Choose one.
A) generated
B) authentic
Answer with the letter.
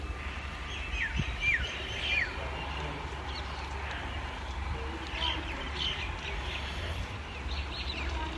B